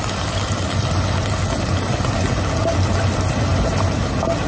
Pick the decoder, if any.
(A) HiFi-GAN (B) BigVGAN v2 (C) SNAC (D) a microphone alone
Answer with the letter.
D